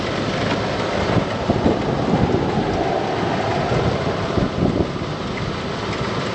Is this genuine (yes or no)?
yes